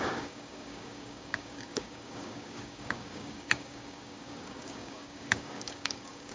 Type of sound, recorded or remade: remade